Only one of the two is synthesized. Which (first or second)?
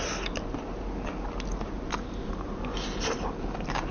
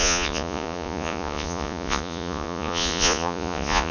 second